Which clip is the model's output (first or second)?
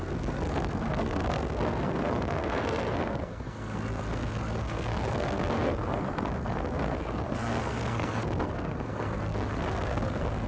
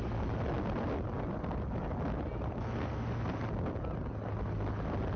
first